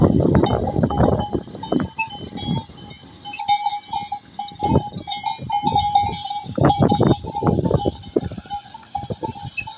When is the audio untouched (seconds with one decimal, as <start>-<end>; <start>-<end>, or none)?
0.0-6.2; 7.3-9.8